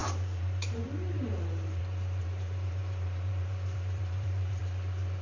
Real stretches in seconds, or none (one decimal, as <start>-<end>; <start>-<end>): 1.8-2.2; 4.6-5.2